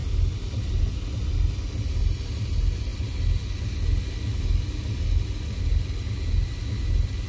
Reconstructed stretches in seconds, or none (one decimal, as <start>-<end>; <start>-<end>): none